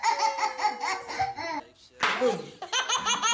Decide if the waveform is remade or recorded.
recorded